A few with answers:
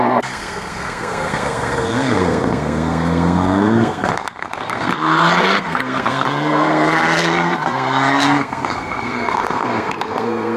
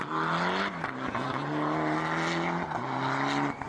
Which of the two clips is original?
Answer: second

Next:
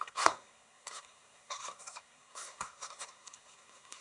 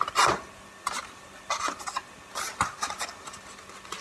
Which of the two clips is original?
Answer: second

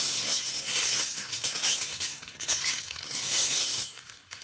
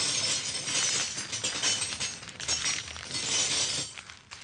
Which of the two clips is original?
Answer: second